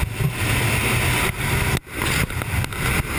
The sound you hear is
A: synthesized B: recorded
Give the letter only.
B